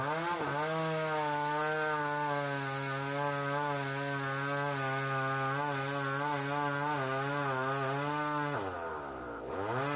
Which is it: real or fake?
real